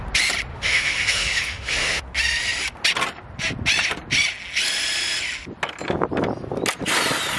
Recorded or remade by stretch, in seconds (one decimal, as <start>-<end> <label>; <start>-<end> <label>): 0.0-0.5 recorded; 0.5-2.0 remade; 2.0-7.4 recorded